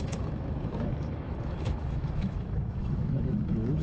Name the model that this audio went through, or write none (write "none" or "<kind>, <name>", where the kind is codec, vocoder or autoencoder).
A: autoencoder, DAC-VAE